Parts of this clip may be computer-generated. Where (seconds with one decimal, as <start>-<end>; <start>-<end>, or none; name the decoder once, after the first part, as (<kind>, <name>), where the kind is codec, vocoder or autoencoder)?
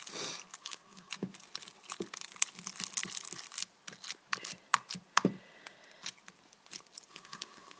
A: 0.6-1.1 (codec, SNAC); 7.1-7.8